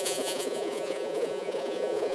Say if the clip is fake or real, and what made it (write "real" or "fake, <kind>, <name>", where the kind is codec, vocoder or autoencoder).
fake, vocoder, Vocos